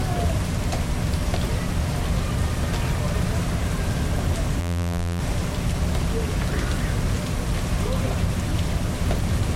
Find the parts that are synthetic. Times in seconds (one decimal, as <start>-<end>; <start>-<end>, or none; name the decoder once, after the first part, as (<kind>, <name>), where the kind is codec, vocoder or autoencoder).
4.6-5.2 (vocoder, BigVGAN v2)